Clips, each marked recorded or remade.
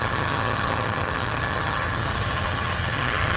remade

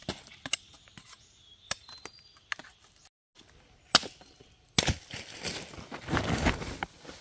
recorded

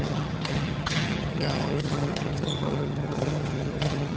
remade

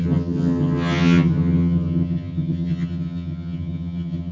remade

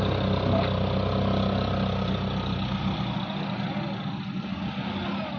recorded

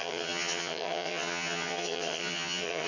remade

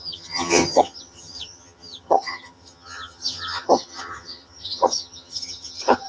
remade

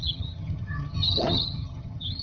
remade